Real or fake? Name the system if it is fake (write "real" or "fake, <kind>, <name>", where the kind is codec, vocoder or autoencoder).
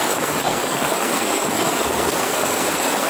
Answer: fake, codec, SNAC